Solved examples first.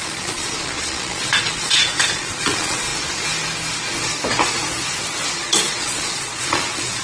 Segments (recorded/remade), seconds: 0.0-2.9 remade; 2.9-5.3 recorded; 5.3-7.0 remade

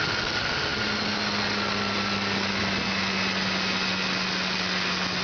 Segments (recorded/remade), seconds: 0.0-5.2 recorded